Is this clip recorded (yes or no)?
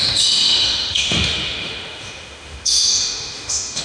no